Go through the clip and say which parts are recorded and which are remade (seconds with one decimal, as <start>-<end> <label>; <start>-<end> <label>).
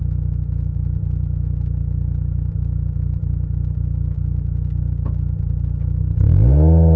0.0-7.0 recorded